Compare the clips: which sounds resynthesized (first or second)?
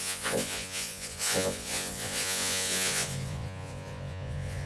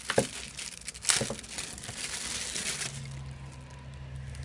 first